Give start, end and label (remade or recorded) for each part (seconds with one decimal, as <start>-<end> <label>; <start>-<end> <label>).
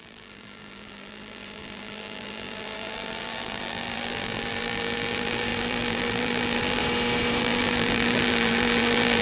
0.0-6.8 remade; 6.8-7.4 recorded; 7.4-9.2 remade